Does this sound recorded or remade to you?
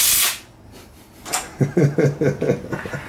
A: recorded